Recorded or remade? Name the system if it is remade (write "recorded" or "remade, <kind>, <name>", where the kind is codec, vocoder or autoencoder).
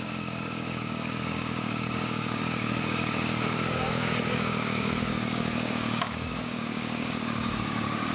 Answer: remade, codec, DAC